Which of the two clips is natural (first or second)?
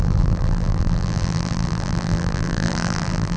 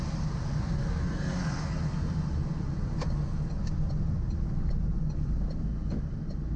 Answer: second